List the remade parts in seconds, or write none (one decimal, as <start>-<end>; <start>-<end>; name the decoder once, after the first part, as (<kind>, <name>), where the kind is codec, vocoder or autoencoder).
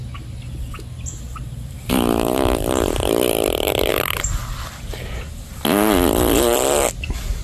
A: 1.4-4.4 (vocoder, BigVGAN v2)